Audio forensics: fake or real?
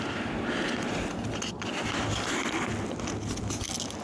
real